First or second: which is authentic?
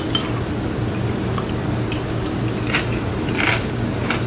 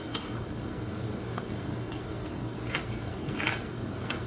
first